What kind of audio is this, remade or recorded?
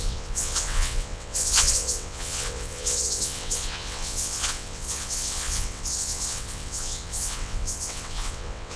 remade